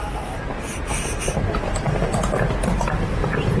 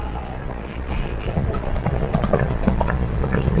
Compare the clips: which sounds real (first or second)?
first